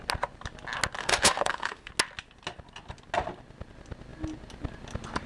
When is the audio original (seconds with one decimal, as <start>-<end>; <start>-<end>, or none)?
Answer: 0.0-1.0; 1.9-5.3